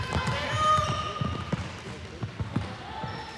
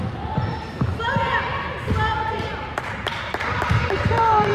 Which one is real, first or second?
first